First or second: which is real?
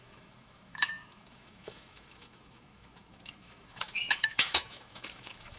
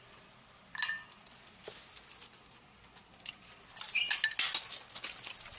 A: second